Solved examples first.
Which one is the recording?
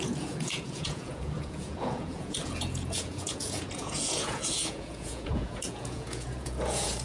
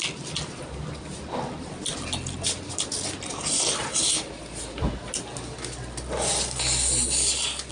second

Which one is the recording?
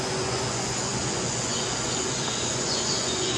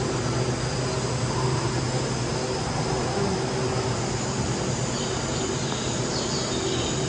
second